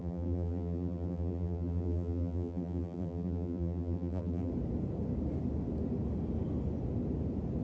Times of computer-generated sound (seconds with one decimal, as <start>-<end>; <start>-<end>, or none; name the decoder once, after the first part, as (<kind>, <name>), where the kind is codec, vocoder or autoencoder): 0.0-4.5 (vocoder, BigVGAN v2)